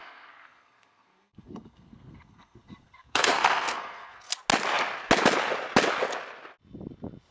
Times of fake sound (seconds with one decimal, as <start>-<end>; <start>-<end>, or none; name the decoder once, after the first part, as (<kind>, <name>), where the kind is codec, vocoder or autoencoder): 0.0-4.3 (codec, SNAC)